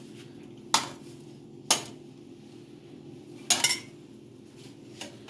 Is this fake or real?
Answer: real